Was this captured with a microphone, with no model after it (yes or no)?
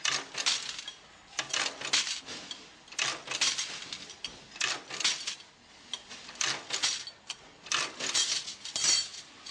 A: yes